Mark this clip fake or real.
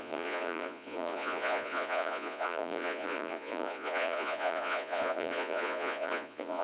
fake